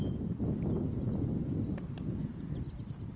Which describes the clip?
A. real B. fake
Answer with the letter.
A